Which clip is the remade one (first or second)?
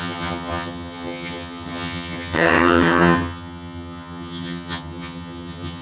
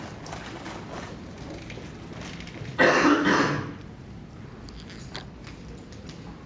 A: first